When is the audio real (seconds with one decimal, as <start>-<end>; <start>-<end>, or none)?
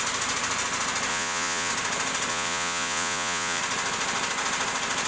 0.0-1.1; 1.7-2.3; 3.6-5.1